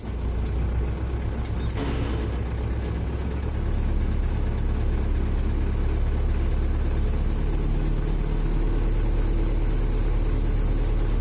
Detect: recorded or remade recorded